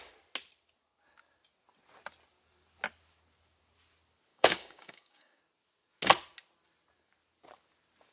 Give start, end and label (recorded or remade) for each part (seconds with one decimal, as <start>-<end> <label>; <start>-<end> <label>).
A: 0.0-4.3 recorded; 4.3-5.4 remade; 5.4-8.1 recorded